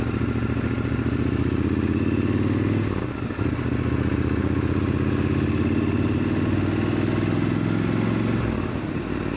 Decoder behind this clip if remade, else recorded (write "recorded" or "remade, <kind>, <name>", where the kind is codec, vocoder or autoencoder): recorded